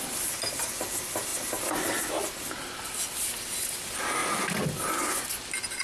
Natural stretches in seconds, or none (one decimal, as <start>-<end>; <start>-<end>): 0.0-5.8